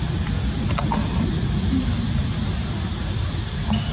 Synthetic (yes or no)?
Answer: no